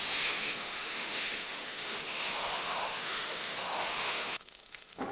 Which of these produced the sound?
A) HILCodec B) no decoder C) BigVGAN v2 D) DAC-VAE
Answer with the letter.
D